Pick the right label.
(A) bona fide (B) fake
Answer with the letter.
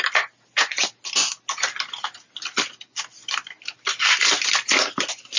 A